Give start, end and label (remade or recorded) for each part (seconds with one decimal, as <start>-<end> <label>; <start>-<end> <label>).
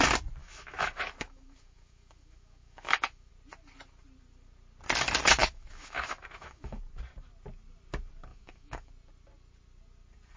0.0-0.4 recorded; 0.4-3.3 remade; 3.3-5.4 recorded; 5.4-6.8 remade; 6.8-8.3 recorded; 8.3-8.9 remade; 8.9-10.4 recorded